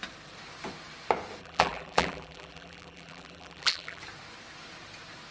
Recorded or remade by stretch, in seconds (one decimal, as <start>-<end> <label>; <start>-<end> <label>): 0.0-1.4 recorded; 1.4-4.0 remade; 4.0-5.3 recorded

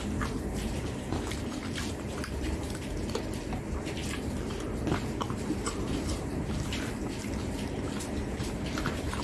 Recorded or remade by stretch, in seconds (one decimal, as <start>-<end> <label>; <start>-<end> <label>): 0.0-4.0 remade; 4.0-4.8 recorded; 4.8-9.2 remade

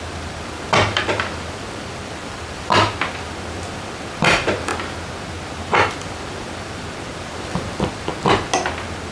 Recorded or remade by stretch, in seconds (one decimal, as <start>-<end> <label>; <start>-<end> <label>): 0.0-4.7 remade; 4.7-6.0 recorded; 6.0-8.1 remade; 8.1-9.1 recorded

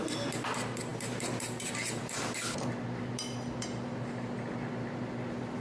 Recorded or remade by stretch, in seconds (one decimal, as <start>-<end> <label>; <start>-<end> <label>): 0.0-0.9 recorded; 0.9-2.4 remade; 2.4-5.6 recorded